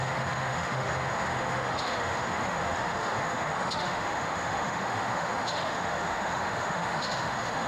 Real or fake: fake